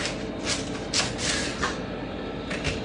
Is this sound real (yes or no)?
yes